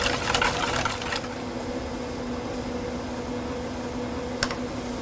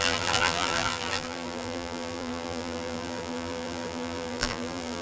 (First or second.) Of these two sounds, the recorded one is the first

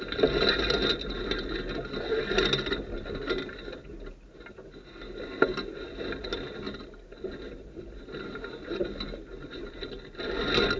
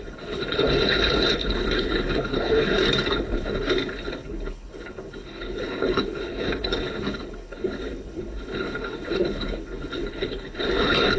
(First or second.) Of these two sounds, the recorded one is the first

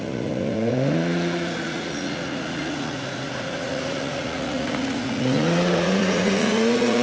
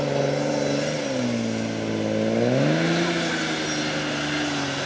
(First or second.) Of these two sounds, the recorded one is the second